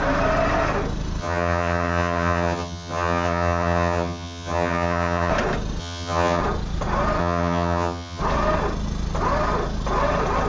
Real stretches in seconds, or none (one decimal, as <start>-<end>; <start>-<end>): 0.0-1.2; 5.3-5.8; 6.4-7.2; 8.2-10.5